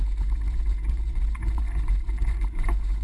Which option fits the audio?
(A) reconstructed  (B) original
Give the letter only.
A